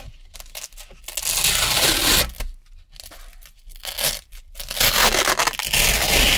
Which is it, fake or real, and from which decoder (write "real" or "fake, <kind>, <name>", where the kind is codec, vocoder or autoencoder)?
real